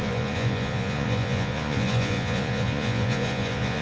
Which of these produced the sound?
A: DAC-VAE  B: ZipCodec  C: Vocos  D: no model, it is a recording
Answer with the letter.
C